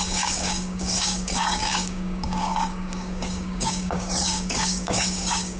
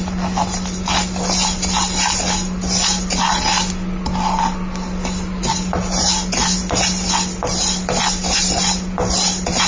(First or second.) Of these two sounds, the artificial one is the first